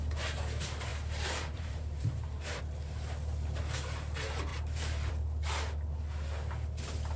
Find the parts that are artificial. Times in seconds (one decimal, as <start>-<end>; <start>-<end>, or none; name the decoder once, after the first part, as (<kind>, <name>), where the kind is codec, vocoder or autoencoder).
0.9-2.6 (vocoder, BigVGAN v2); 4.5-5.1

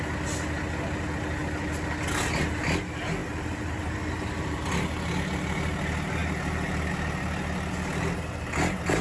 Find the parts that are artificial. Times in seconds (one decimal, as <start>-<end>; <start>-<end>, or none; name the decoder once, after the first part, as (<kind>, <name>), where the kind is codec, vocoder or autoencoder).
3.2-4.6 (vocoder, BigVGAN v2)

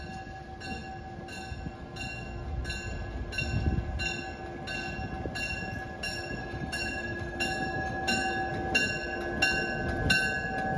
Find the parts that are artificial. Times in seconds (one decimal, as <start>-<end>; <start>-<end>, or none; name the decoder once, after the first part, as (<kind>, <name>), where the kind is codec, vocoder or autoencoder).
6.4-8.5 (autoencoder, DAC-VAE)